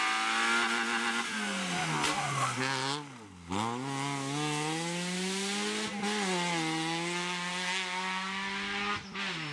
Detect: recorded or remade recorded